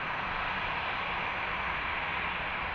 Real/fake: real